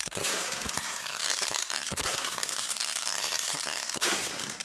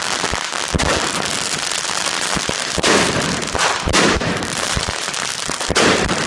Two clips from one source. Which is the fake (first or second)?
first